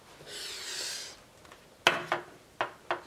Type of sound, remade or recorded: recorded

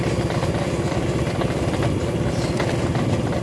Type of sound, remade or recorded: recorded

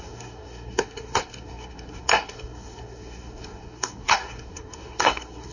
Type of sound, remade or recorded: remade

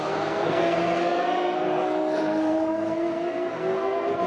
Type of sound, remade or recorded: remade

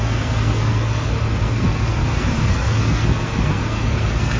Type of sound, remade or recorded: remade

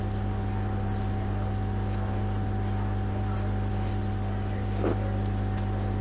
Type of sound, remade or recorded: recorded